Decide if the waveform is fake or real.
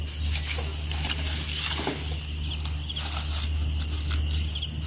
real